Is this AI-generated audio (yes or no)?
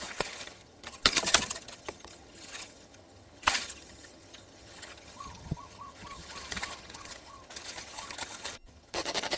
yes